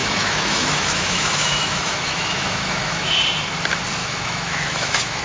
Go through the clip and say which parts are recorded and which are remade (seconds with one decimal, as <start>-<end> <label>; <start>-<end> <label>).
0.0-3.1 remade; 3.1-4.0 recorded; 4.0-5.2 remade